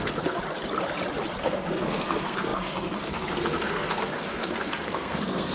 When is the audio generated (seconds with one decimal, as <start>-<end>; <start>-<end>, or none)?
0.0-0.4; 1.4-5.5